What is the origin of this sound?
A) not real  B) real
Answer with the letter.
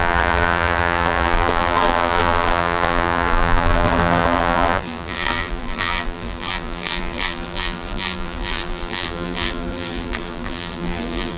A